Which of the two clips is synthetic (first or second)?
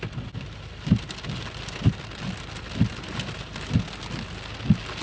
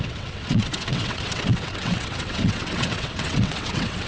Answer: second